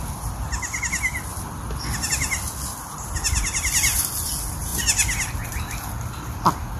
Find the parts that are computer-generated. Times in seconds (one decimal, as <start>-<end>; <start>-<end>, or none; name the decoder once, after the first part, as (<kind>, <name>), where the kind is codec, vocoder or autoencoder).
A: none